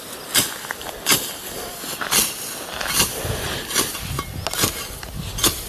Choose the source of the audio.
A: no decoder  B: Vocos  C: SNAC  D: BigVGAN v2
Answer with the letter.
A